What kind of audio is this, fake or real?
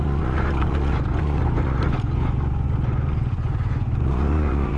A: fake